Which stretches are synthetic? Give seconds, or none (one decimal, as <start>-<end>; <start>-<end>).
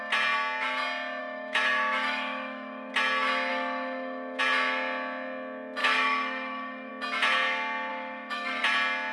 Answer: 1.2-2.9; 3.5-4.4; 5.8-6.9; 7.9-8.6